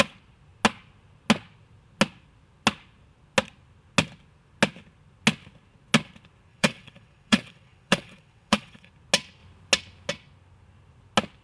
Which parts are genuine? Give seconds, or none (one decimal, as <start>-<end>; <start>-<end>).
0.0-6.5; 8.9-11.4